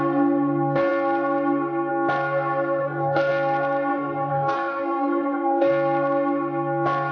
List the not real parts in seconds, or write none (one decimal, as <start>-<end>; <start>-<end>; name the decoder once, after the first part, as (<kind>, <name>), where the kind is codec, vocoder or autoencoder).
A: 2.8-3.3 (codec, SNAC); 3.9-5.7